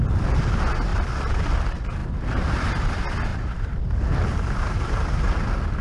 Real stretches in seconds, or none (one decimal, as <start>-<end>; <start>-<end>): 0.0-0.9; 1.4-2.0; 2.7-3.3; 3.8-4.3; 5.3-5.8